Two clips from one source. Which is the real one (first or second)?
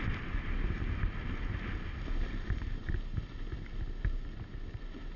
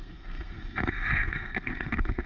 first